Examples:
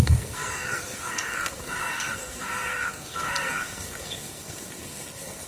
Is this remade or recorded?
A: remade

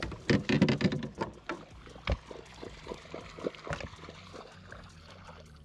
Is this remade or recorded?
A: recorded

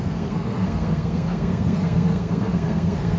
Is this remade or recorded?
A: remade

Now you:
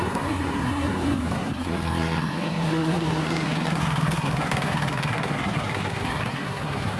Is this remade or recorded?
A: remade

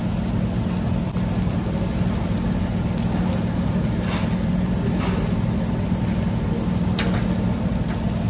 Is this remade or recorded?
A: recorded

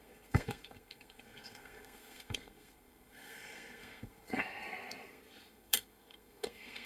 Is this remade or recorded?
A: remade